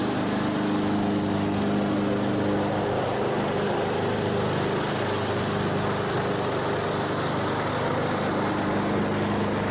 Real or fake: real